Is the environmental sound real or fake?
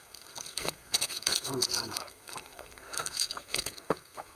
fake